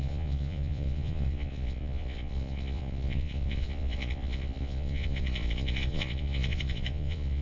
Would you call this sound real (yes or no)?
no